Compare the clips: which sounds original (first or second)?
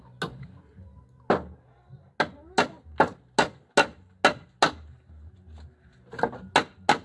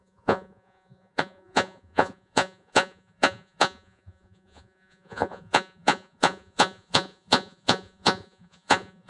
first